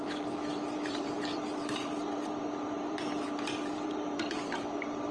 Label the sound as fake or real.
fake